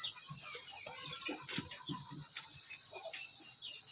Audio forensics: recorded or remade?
recorded